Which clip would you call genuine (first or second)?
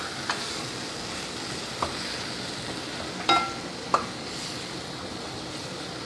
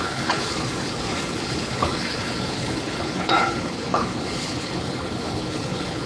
first